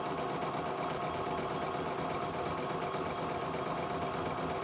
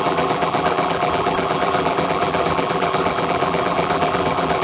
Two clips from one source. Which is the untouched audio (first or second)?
first